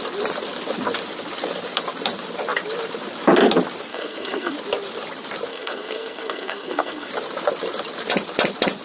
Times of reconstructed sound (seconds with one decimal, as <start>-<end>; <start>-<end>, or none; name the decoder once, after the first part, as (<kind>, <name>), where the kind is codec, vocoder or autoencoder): 3.9-4.5 (codec, SNAC); 5.5-7.1